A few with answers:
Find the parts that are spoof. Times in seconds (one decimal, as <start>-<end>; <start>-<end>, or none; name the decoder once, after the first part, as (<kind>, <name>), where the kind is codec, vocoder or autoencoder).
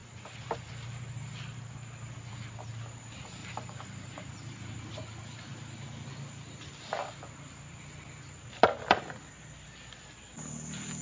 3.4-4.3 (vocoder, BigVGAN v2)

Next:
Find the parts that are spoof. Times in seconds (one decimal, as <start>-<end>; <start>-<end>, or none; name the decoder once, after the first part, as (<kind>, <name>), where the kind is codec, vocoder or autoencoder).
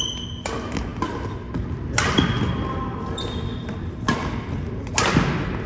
none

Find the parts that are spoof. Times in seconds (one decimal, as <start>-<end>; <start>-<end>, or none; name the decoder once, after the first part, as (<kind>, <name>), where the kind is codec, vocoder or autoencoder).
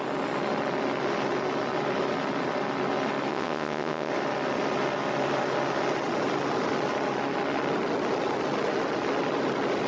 3.3-4.1 (vocoder, WaveNeXt)